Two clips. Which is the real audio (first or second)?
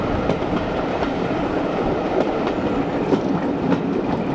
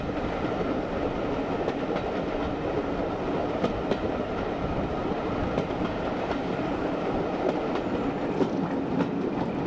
second